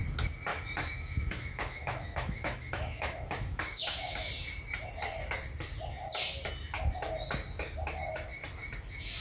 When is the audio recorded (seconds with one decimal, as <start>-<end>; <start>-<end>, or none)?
0.0-0.5; 4.3-9.2